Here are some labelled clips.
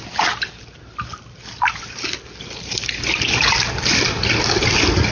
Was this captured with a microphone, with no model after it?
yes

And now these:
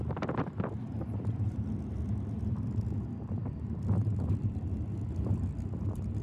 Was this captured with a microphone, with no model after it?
no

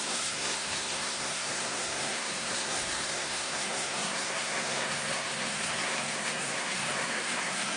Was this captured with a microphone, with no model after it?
no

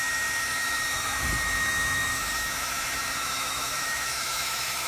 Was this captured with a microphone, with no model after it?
no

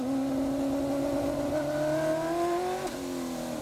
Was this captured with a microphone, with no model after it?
yes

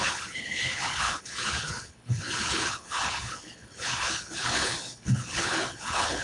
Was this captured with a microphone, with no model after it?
no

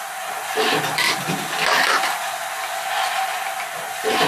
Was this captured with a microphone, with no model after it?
yes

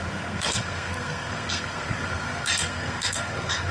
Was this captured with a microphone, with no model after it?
no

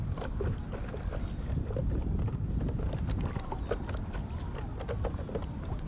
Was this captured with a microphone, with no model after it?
yes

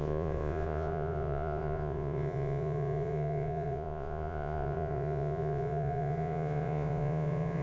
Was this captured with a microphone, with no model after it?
no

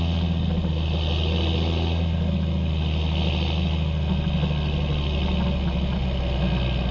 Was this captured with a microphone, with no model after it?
yes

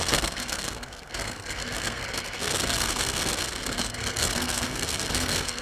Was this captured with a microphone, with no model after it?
no